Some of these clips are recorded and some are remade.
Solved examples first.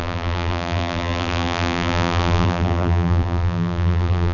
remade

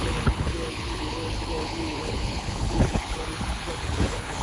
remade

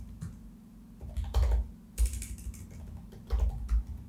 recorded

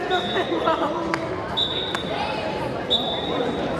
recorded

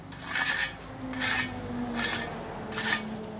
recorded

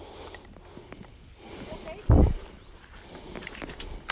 recorded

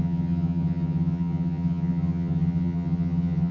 remade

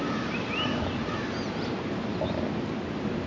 recorded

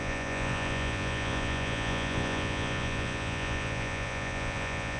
remade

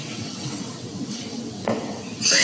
remade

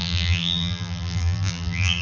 remade